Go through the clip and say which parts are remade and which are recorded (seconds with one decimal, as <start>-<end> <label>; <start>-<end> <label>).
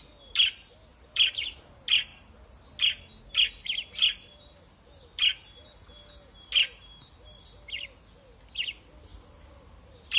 0.0-0.9 recorded; 0.9-1.6 remade; 1.6-9.1 recorded; 9.1-10.2 remade